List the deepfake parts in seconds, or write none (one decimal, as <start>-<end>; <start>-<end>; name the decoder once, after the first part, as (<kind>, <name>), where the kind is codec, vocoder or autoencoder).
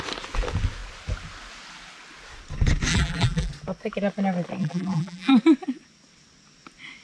2.9-3.5 (vocoder, BigVGAN v2); 4.6-5.3